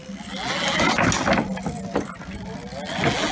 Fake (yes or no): no